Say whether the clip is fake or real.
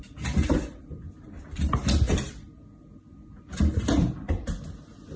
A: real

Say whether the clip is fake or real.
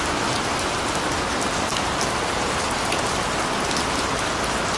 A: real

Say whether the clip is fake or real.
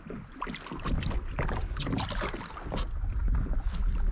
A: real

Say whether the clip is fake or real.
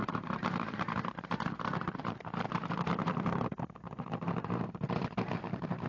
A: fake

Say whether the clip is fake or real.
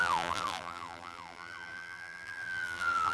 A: fake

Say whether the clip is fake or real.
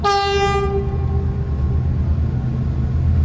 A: real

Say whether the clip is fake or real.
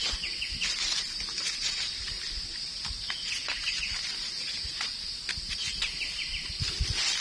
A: real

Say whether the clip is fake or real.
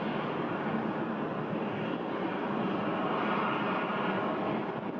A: real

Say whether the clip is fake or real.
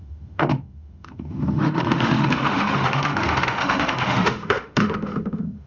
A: fake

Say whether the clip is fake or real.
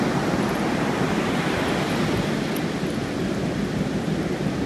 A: real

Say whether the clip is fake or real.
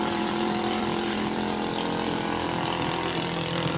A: fake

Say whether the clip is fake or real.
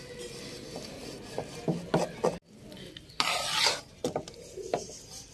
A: real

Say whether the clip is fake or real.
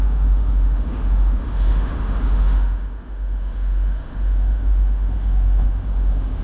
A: fake